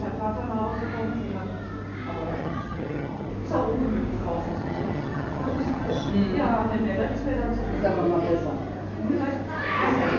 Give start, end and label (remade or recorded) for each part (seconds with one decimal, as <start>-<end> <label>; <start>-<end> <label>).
0.0-2.4 recorded; 2.4-3.3 remade; 3.3-4.5 recorded; 4.5-6.1 remade; 6.1-10.2 recorded